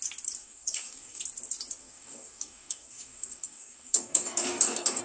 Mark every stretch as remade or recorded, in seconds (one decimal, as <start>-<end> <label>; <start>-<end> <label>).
0.0-0.4 recorded; 0.4-1.2 remade; 1.2-1.8 recorded; 1.8-5.0 remade